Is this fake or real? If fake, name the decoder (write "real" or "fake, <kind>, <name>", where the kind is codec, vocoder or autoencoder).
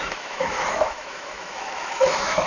fake, autoencoder, DAC-VAE